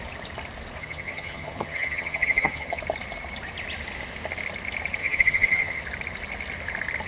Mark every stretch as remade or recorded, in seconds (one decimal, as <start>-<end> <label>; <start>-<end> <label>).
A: 0.0-0.8 recorded; 0.8-2.8 remade; 2.8-5.0 recorded; 5.0-5.8 remade; 5.8-7.1 recorded